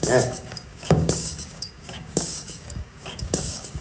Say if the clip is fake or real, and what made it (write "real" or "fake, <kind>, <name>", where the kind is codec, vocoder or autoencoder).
fake, codec, DAC